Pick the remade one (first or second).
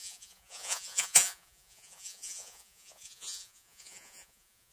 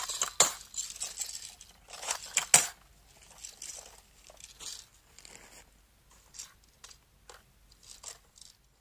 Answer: first